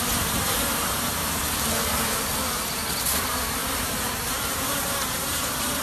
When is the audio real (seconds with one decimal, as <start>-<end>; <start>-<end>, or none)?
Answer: 1.4-2.7